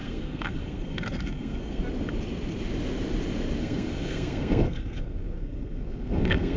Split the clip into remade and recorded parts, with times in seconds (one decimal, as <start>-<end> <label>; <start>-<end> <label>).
0.0-1.8 remade; 1.8-3.6 recorded; 3.6-6.6 remade